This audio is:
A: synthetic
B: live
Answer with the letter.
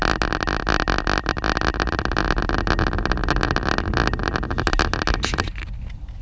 B